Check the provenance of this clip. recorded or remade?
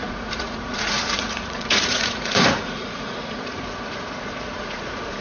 remade